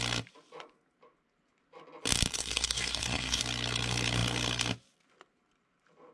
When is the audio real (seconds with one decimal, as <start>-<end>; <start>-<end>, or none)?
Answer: 0.0-2.3; 3.4-6.1